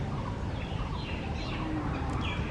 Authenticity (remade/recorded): recorded